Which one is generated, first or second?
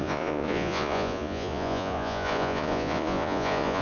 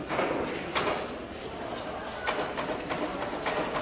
first